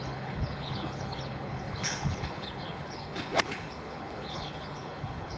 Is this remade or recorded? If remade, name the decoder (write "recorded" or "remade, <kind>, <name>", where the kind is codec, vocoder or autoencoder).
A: remade, codec, HILCodec